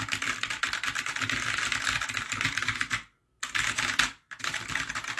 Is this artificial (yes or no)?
no